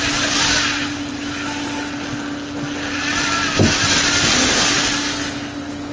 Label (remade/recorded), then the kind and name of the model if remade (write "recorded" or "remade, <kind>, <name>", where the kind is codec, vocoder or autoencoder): recorded